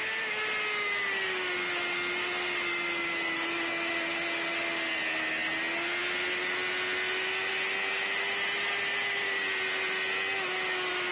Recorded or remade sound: recorded